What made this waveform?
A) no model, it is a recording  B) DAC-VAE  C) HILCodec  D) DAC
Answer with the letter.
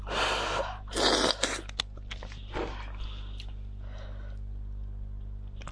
A